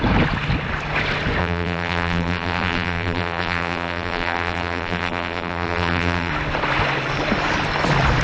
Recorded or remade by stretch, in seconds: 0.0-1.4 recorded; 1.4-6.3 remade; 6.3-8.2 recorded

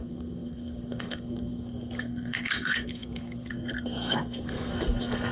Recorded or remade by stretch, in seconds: 0.0-5.3 remade

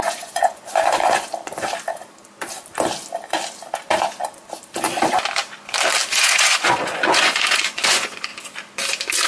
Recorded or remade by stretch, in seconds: 0.0-1.3 remade; 1.3-6.1 recorded; 6.1-8.3 remade; 8.3-9.3 recorded

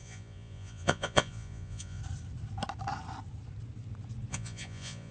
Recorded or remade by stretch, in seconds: 0.0-2.0 remade; 2.0-4.3 recorded; 4.3-5.1 remade

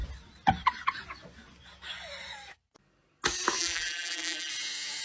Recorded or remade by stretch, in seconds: 0.0-3.6 recorded; 3.6-4.5 remade; 4.5-5.0 recorded

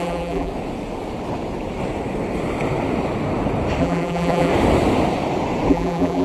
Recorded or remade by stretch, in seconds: 0.0-0.5 remade; 0.5-3.8 recorded; 3.8-4.5 remade; 4.5-5.7 recorded; 5.7-6.2 remade

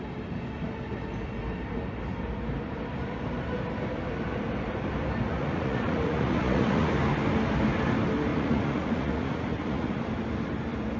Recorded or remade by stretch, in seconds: 0.0-5.3 recorded; 5.3-6.9 remade; 6.9-8.3 recorded; 8.3-10.0 remade; 10.0-11.0 recorded